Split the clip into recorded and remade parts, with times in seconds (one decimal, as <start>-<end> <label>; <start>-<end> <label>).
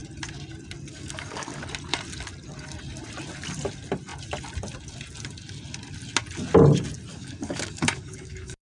0.0-0.9 recorded; 0.9-1.6 remade; 1.6-7.1 recorded; 7.1-8.6 remade